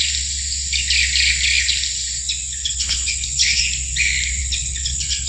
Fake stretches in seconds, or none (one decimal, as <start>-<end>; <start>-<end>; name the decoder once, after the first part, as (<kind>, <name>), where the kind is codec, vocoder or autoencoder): 2.6-3.6 (codec, HILCodec); 4.4-5.3